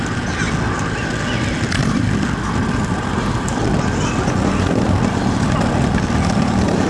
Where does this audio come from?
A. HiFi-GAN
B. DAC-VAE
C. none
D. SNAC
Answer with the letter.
C